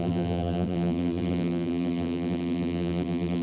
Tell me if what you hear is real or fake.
fake